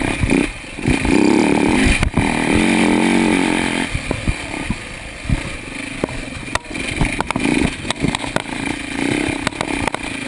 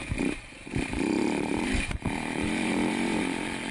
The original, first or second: first